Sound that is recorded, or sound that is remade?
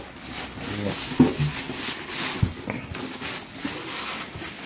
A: recorded